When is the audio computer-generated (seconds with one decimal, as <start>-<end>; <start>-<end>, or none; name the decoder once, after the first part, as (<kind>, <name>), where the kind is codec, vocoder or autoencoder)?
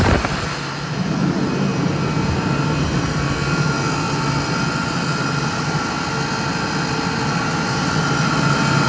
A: none